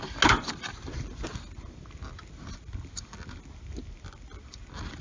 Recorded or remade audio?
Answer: recorded